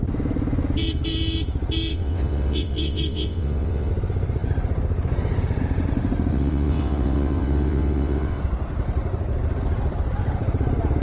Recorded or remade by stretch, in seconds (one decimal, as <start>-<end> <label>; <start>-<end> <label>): 0.0-1.9 recorded; 1.9-3.9 remade; 3.9-6.3 recorded; 6.3-8.4 remade; 8.4-11.0 recorded